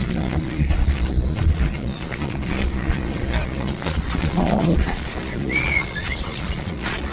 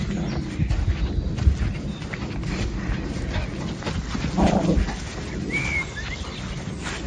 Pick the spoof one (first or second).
first